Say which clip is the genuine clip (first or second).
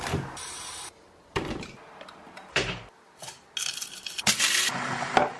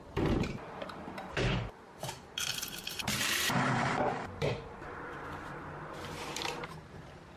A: first